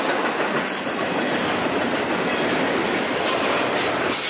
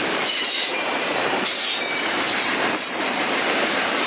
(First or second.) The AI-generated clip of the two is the second